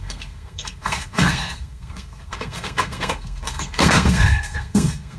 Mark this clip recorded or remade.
remade